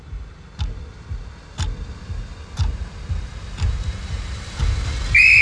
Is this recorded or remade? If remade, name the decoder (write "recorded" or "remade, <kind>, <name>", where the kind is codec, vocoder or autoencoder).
recorded